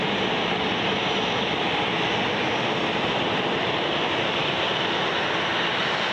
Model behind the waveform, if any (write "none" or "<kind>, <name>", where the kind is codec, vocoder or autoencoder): none